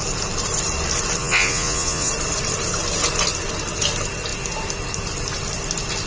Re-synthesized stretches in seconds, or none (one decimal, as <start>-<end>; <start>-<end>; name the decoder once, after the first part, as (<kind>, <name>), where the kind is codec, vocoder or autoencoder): 1.2-2.1 (vocoder, Vocos)